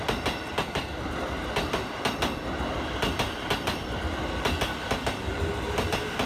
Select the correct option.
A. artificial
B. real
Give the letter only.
B